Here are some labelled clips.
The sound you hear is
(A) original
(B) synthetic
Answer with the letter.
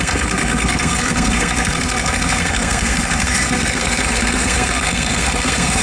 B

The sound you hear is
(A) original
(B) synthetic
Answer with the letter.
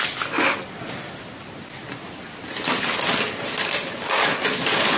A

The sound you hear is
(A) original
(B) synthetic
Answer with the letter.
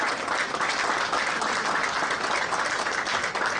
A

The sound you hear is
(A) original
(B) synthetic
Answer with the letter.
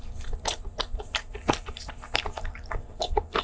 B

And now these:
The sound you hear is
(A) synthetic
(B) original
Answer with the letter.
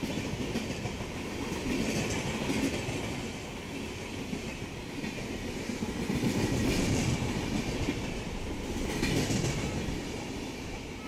B